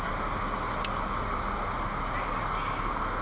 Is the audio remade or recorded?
recorded